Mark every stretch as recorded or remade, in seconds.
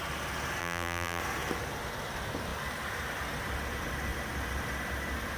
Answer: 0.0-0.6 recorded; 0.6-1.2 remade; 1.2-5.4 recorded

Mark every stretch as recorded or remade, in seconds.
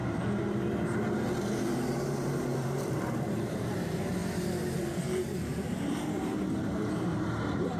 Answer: 0.0-1.1 recorded; 1.1-4.2 remade; 4.2-5.4 recorded; 5.4-7.8 remade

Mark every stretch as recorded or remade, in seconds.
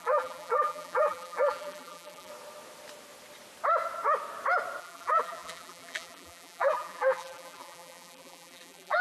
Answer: 0.0-2.3 remade; 2.3-4.8 recorded; 4.8-9.0 remade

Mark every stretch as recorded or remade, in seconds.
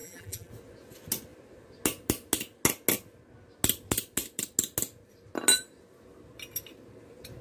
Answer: 0.0-0.5 remade; 0.5-7.4 recorded